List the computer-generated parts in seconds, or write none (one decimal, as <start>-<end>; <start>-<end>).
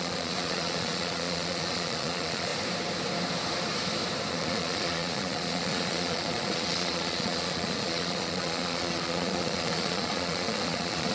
0.0-2.5; 4.3-11.1